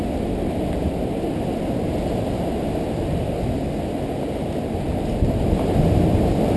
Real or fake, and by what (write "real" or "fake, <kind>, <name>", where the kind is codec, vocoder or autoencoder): real